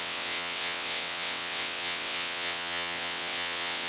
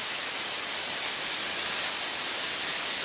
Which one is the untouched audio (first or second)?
second